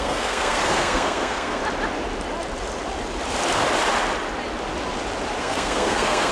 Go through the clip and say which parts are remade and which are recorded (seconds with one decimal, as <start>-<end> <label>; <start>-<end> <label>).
0.0-1.6 remade; 1.6-5.4 recorded; 5.4-6.3 remade